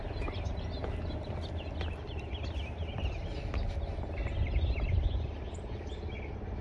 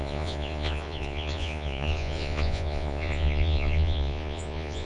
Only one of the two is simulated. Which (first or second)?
second